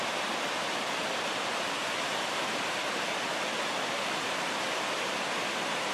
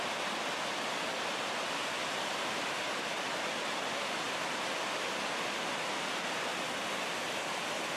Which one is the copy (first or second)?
first